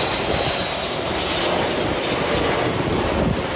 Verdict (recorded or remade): recorded